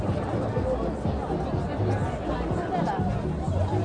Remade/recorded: recorded